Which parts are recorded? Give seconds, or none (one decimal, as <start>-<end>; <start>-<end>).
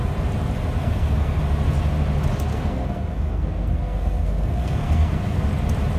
0.0-0.8; 1.4-2.5; 5.4-6.0